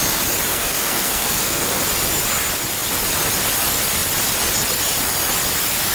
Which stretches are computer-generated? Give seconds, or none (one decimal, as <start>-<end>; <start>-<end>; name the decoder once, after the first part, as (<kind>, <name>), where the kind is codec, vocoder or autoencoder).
0.5-1.8 (codec, SNAC)